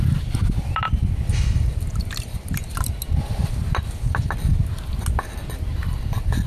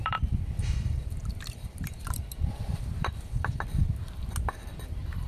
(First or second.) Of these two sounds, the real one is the first